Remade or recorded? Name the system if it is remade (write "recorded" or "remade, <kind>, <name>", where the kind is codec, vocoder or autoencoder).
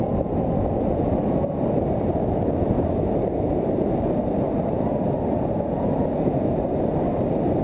recorded